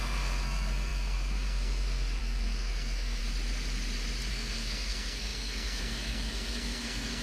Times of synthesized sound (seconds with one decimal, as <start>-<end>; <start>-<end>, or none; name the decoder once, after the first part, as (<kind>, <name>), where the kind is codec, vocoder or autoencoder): 0.0-3.2 (codec, SNAC); 4.3-7.2